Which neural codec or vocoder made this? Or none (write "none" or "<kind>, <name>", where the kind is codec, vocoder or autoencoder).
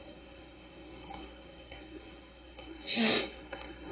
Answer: codec, SNAC